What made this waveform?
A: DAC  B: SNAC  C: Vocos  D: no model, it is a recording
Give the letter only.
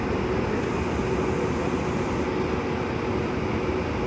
D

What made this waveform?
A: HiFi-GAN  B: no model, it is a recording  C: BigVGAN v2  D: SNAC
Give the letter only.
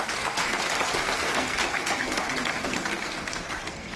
D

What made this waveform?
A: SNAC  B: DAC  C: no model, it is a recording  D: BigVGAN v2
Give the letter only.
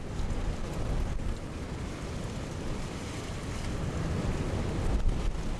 C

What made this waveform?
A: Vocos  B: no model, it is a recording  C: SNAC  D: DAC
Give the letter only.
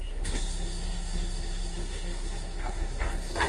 C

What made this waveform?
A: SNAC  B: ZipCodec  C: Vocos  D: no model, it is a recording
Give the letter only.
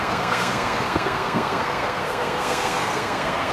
A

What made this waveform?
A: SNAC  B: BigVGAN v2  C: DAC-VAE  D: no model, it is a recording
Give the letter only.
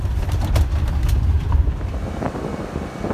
D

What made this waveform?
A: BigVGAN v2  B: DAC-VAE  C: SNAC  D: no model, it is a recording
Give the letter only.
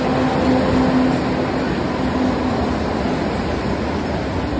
D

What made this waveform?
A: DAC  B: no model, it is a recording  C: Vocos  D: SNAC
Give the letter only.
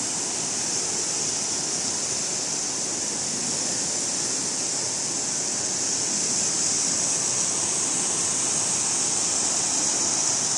B